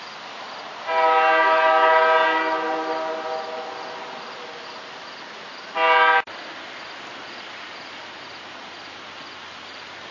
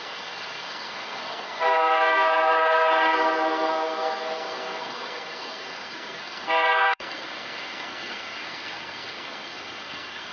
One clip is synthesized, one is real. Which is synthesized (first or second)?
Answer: second